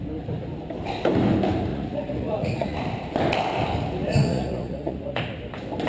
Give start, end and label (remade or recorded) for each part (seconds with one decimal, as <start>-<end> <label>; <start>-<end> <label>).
0.0-1.7 recorded; 1.7-2.8 remade; 2.8-4.0 recorded; 4.0-5.2 remade; 5.2-5.9 recorded

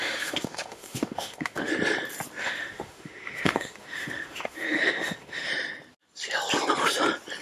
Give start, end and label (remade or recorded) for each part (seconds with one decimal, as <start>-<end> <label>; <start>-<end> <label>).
0.0-1.7 remade; 1.7-2.4 recorded; 2.4-5.5 remade; 5.5-7.4 recorded

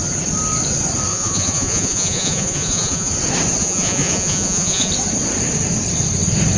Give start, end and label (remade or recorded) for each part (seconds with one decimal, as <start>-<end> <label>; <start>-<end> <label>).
0.0-1.1 recorded; 1.1-3.1 remade; 3.1-3.6 recorded; 3.6-4.9 remade; 4.9-6.6 recorded

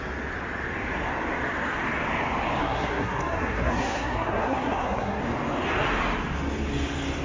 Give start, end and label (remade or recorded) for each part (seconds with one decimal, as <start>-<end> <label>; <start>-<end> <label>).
0.0-2.6 recorded; 2.6-5.2 remade; 5.2-7.2 recorded

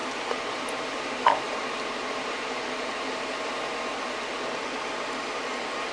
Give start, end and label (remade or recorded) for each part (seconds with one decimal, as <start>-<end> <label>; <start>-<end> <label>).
0.0-3.5 remade; 3.5-4.6 recorded; 4.6-5.2 remade; 5.2-5.9 recorded

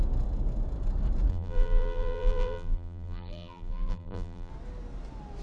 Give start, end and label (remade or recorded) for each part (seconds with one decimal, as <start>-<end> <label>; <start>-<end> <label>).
0.0-1.3 recorded; 1.3-4.5 remade; 4.5-5.4 recorded

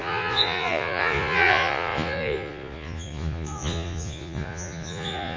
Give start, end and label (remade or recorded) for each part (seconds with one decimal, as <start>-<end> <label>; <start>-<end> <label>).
0.0-5.4 remade

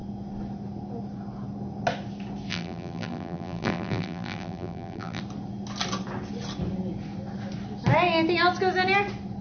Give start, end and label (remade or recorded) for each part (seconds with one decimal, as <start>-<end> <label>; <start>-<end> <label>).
0.0-2.5 recorded; 2.5-5.2 remade; 5.2-9.4 recorded